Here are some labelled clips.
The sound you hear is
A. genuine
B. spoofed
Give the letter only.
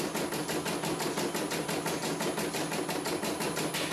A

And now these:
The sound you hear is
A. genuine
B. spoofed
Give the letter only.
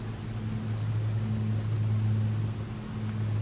A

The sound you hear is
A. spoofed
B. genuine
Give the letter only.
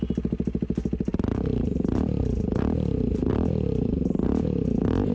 B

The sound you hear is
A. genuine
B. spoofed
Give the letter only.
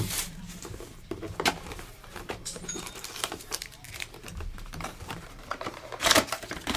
B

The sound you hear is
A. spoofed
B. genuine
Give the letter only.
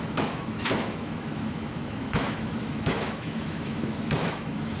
A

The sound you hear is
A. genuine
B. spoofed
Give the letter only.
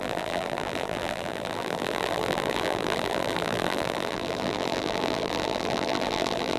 B